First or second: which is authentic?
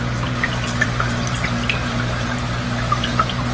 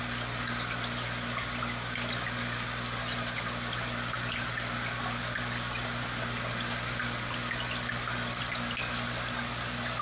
second